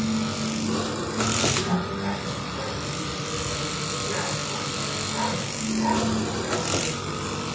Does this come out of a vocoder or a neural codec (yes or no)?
no